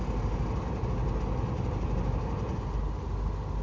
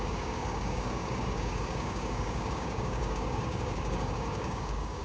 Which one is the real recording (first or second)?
first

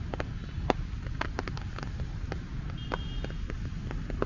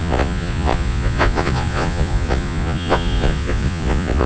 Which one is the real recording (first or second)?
first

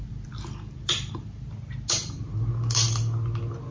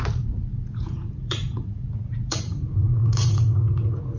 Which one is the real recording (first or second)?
first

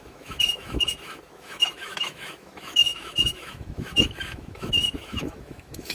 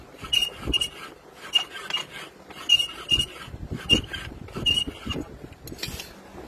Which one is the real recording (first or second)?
second